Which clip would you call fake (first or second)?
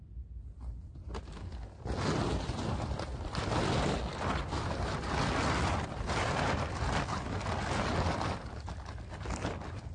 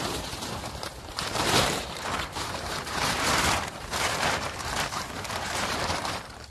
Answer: second